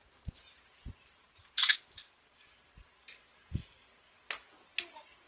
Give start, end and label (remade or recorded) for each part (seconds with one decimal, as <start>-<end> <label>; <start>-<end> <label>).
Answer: 0.0-1.4 remade; 1.4-3.5 recorded; 3.5-3.9 remade; 3.9-4.4 recorded; 4.4-5.3 remade